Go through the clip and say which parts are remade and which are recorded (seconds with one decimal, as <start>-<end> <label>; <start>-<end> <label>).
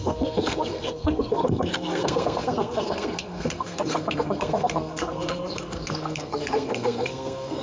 0.0-7.6 remade